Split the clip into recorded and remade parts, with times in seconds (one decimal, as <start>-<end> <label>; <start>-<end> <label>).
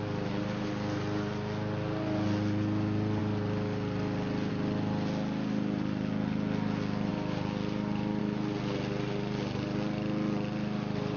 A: 0.0-11.2 recorded